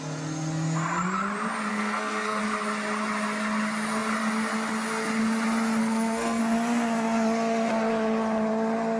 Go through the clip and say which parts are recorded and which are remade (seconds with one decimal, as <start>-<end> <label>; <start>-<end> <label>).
0.0-1.7 recorded; 1.7-2.4 remade; 2.4-5.8 recorded; 5.8-6.4 remade; 6.4-9.0 recorded

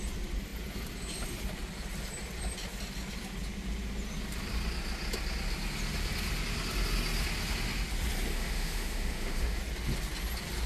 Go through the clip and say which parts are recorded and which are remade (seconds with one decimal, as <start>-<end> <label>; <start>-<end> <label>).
0.0-8.3 recorded; 8.3-9.6 remade; 9.6-10.7 recorded

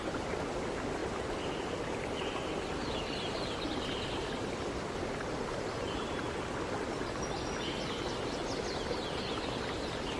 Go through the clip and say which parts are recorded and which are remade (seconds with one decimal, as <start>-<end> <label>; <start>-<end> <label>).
0.0-10.2 recorded

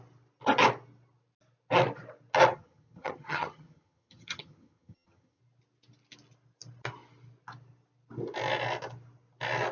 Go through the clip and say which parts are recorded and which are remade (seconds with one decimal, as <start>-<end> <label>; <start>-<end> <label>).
0.0-2.5 recorded; 2.5-5.4 remade; 5.4-9.7 recorded

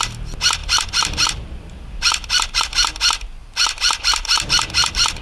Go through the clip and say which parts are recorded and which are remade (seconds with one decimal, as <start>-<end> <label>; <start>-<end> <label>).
0.0-0.6 recorded; 0.6-2.6 remade; 2.6-3.4 recorded; 3.4-4.5 remade; 4.5-5.2 recorded

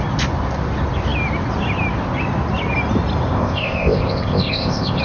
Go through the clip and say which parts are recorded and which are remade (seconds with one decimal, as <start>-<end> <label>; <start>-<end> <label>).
0.0-3.3 recorded; 3.3-5.0 remade

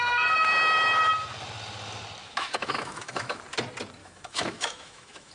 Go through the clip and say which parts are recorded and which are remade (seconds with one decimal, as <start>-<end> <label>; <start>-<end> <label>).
0.0-2.2 recorded; 2.2-3.4 remade; 3.4-4.0 recorded; 4.0-5.3 remade

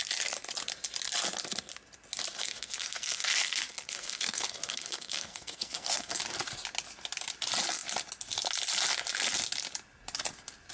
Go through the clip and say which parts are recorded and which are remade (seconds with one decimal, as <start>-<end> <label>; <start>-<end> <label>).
0.0-2.4 recorded; 2.4-6.2 remade; 6.2-10.7 recorded